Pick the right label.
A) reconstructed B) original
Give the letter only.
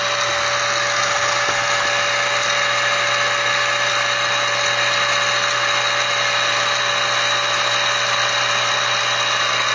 B